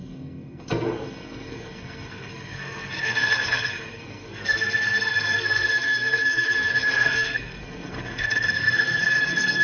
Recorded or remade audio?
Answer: remade